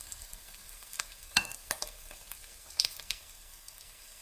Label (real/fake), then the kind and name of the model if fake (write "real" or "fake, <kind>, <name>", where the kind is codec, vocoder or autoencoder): fake, codec, SNAC